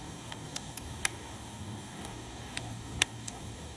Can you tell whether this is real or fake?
fake